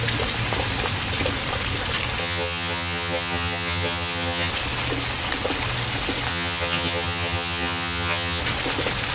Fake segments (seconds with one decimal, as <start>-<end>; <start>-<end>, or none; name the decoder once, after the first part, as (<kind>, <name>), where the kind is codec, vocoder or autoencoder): 2.2-4.5 (vocoder, HiFi-GAN); 6.3-8.4